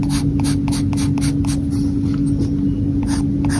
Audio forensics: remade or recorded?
recorded